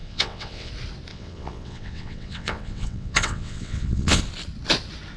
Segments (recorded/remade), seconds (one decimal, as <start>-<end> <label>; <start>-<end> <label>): 0.0-0.7 remade; 0.7-1.1 recorded; 1.1-4.2 remade; 4.2-5.2 recorded